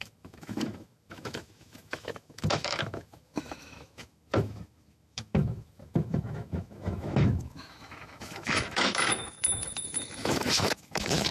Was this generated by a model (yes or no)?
yes